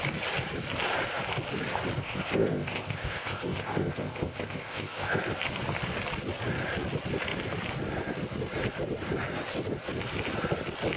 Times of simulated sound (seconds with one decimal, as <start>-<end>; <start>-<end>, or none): 2.0-5.2